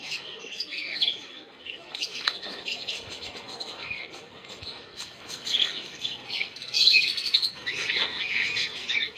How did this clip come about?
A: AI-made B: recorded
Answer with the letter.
A